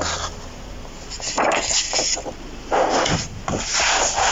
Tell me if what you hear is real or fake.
real